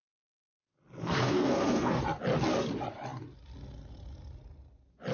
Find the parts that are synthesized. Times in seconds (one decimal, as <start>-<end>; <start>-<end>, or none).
1.0-2.0